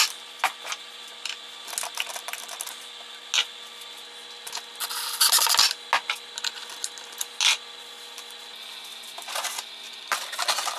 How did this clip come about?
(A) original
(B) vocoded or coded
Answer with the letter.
A